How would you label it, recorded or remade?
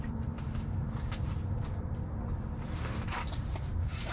remade